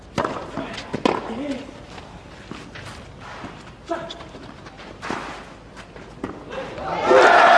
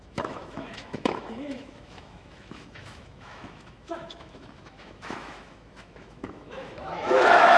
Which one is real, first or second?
first